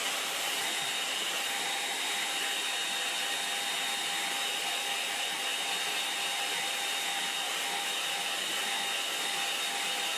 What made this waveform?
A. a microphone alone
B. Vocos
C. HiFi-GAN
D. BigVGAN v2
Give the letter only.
A